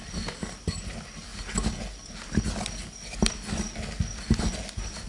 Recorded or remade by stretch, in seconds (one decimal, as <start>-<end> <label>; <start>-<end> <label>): 0.0-5.1 recorded